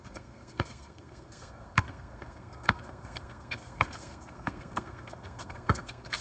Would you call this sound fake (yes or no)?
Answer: yes